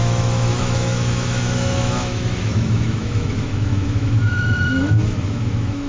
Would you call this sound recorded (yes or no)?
no